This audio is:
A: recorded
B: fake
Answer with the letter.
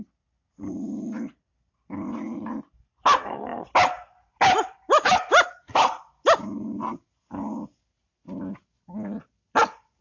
A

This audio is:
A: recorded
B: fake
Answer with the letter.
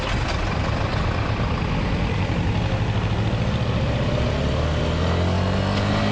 A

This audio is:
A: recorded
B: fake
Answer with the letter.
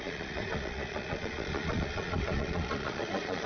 B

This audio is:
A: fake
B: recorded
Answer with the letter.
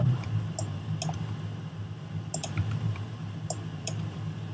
B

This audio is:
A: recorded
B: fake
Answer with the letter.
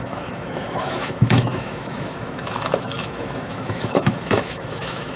B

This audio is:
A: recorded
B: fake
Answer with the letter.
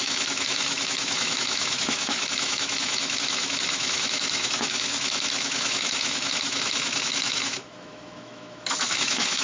B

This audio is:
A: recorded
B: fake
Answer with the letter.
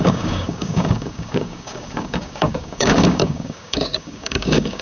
B